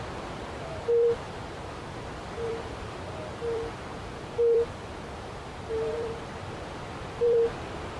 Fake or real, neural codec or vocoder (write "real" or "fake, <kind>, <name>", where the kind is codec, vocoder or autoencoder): fake, vocoder, BigVGAN v2